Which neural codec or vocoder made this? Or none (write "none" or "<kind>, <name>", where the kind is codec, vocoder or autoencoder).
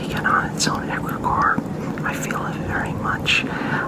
none